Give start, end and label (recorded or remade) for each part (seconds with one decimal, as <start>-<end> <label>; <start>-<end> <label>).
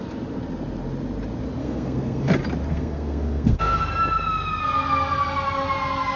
0.0-1.6 recorded; 1.6-2.3 remade; 2.3-2.7 recorded; 2.7-3.8 remade; 3.8-6.2 recorded